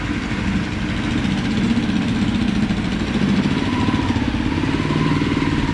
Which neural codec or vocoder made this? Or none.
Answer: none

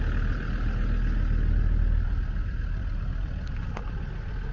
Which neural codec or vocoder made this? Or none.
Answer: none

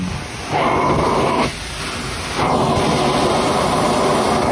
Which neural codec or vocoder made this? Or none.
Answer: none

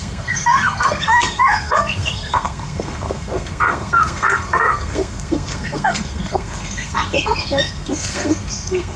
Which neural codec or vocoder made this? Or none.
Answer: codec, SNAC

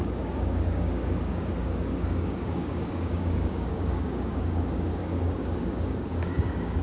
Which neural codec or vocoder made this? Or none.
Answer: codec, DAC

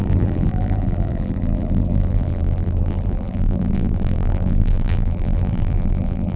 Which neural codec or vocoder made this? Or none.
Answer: vocoder, BigVGAN v2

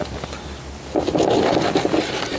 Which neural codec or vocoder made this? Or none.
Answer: vocoder, BigVGAN v2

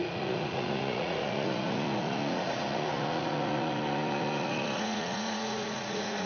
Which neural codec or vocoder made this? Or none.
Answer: vocoder, Vocos